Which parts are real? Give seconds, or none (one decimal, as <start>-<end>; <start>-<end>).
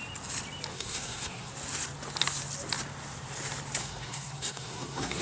0.0-0.7; 1.5-3.8